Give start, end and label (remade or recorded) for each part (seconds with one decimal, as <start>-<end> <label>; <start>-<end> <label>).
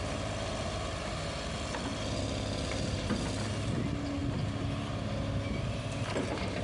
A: 0.0-6.6 recorded